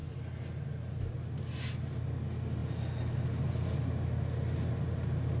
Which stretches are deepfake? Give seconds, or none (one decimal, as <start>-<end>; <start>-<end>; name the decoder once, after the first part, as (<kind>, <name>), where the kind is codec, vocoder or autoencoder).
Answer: none